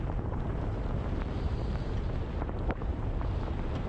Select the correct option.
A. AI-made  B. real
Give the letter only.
A